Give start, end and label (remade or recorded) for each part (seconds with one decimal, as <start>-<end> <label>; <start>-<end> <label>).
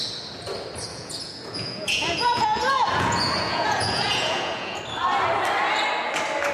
0.0-0.9 recorded; 0.9-4.8 remade; 4.8-6.5 recorded